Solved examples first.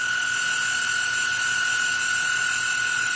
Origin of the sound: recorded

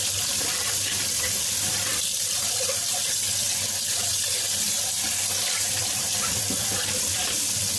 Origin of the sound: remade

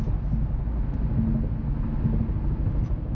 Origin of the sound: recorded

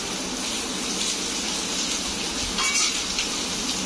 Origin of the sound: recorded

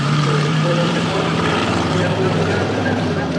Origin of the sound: remade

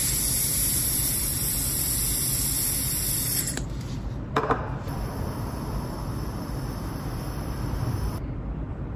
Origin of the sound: remade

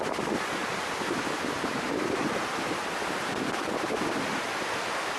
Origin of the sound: recorded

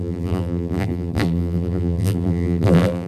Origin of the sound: remade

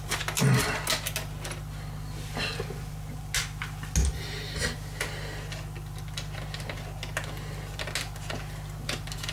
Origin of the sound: recorded